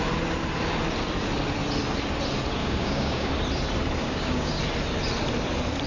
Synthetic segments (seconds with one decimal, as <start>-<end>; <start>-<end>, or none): 2.6-3.3; 4.0-4.6